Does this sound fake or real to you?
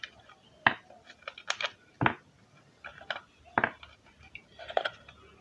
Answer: real